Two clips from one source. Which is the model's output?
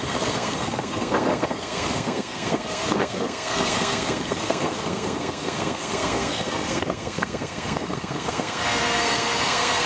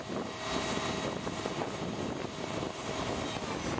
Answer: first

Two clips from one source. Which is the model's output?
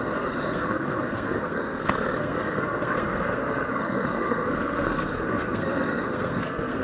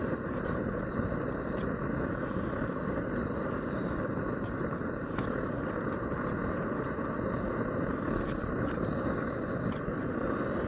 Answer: first